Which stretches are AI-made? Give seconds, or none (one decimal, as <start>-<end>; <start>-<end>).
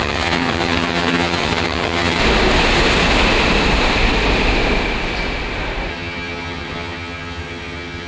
0.0-2.2; 5.9-8.1